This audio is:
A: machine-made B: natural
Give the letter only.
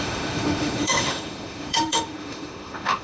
A